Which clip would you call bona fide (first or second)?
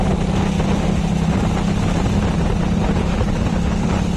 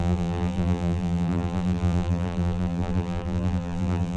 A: first